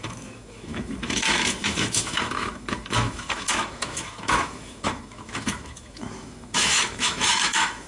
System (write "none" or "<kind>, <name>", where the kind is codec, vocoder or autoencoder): autoencoder, DAC-VAE